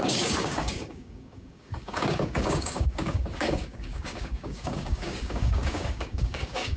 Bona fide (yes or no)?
no